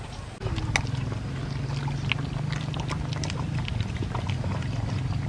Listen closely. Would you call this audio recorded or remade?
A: recorded